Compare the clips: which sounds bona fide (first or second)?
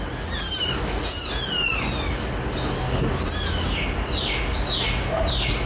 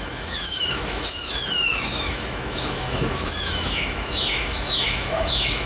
first